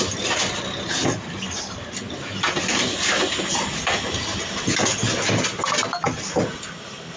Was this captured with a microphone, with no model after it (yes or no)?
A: yes